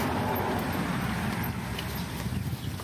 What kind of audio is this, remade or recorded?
recorded